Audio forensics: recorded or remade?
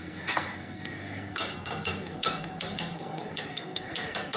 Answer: remade